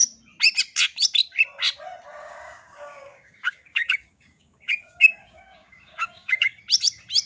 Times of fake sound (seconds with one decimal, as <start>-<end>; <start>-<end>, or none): 2.2-6.6